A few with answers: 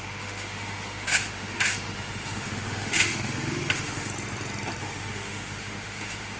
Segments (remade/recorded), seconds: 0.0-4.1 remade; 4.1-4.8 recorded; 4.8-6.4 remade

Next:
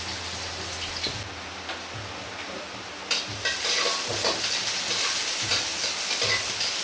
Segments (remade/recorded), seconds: 0.0-6.8 recorded

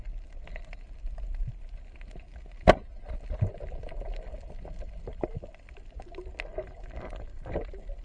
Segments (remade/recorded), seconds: 0.0-2.3 recorded; 2.3-5.4 remade; 5.4-6.5 recorded; 6.5-7.5 remade; 7.5-8.0 recorded

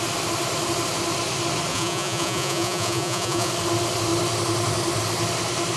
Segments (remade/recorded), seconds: 0.0-1.7 recorded; 1.7-3.5 remade; 3.5-5.8 recorded

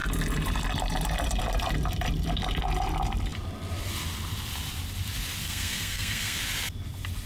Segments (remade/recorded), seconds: 0.0-5.4 recorded; 5.4-6.4 remade; 6.4-7.3 recorded